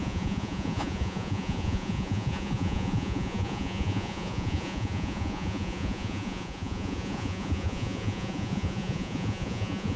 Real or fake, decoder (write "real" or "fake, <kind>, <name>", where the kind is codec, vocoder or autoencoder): fake, vocoder, Vocos